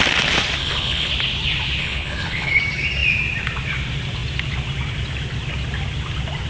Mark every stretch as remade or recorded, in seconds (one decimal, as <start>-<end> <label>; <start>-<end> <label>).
0.0-0.6 recorded; 0.6-1.1 remade; 1.1-1.8 recorded; 1.8-2.6 remade; 2.6-6.5 recorded